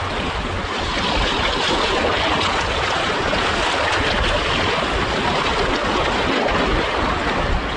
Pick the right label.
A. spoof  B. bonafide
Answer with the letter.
B